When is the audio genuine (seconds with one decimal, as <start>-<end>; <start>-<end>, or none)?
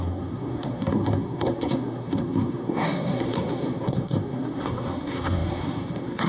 none